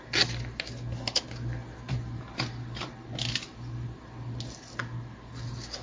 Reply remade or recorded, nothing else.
recorded